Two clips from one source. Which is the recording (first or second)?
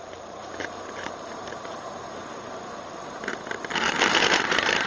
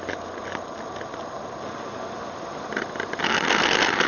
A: second